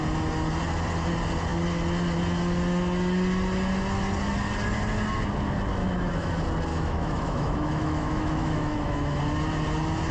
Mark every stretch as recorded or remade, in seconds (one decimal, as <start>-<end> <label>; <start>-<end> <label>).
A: 0.0-5.8 recorded; 5.8-6.3 remade; 6.3-6.7 recorded; 6.7-9.2 remade; 9.2-10.1 recorded